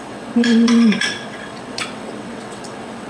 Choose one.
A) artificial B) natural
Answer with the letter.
A